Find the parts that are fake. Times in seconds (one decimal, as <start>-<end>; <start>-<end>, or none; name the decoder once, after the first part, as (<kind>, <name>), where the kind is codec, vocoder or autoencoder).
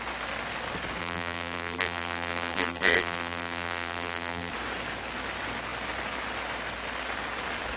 1.0-4.5 (vocoder, BigVGAN v2)